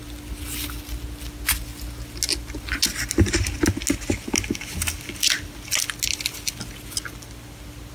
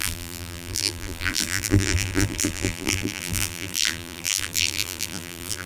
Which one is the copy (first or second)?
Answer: second